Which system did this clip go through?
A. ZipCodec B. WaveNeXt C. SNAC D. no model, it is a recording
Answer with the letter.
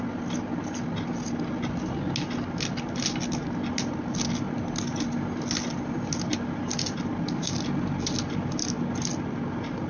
D